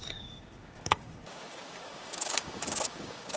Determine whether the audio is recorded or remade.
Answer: remade